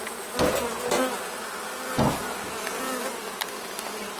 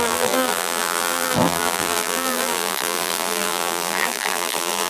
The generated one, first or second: second